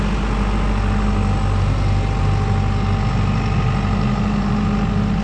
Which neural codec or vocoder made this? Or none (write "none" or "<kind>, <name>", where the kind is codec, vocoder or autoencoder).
none